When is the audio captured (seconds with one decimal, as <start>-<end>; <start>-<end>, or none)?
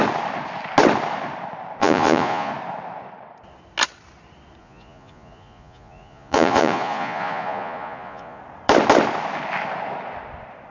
0.0-1.8; 2.5-4.6; 8.4-10.7